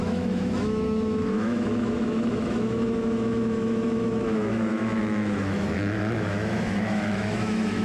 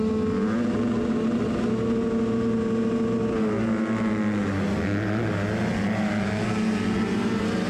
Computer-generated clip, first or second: first